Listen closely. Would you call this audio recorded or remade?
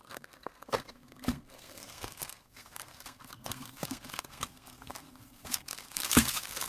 remade